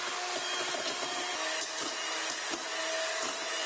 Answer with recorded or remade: recorded